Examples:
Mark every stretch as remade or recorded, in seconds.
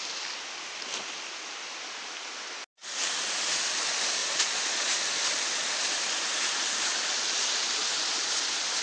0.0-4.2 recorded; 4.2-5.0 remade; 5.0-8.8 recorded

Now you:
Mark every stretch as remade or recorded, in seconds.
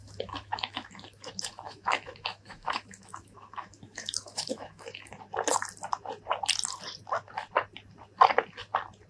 0.0-5.2 remade; 5.2-9.1 recorded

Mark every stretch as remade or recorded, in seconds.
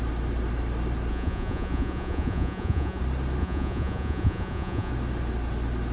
0.0-1.1 recorded; 1.1-3.0 remade; 3.0-3.4 recorded; 3.4-4.9 remade; 4.9-5.9 recorded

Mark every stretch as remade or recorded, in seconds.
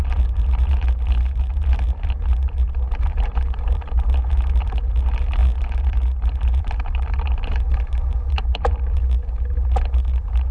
0.0-9.0 remade; 9.0-9.5 recorded; 9.5-10.5 remade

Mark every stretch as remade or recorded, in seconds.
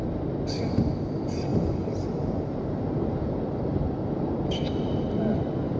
0.0-1.5 recorded; 1.5-5.0 remade; 5.0-5.8 recorded